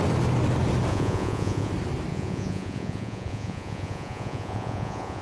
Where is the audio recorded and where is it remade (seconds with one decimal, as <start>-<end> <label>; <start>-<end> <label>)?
0.0-0.9 recorded; 0.9-1.7 remade; 1.7-2.1 recorded; 2.1-5.2 remade